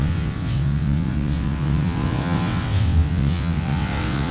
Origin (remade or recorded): remade